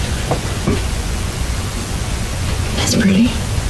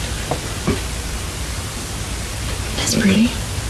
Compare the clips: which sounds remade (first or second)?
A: first